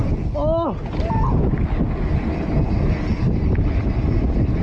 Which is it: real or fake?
real